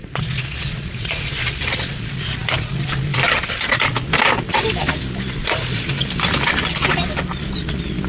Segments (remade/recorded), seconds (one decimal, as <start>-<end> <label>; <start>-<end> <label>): 0.0-2.0 remade; 2.0-8.1 recorded